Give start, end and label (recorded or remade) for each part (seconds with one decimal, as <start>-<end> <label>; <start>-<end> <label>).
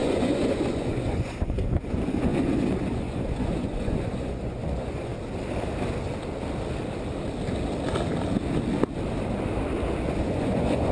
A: 0.0-5.1 remade; 5.1-10.2 recorded; 10.2-10.9 remade